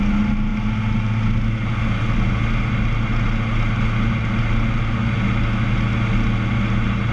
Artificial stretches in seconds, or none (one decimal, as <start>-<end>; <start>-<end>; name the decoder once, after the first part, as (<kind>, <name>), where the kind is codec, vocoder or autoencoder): none